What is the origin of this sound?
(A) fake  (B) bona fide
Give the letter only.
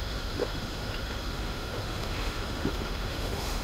A